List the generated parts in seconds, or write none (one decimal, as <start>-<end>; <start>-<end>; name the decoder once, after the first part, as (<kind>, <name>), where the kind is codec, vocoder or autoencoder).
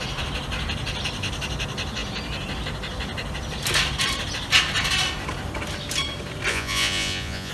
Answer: 6.5-7.5 (vocoder, Vocos)